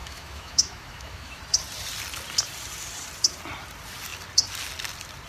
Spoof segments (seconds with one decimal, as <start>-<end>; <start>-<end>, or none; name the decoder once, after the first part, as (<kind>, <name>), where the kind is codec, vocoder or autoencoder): 0.0-1.4 (autoencoder, DAC-VAE)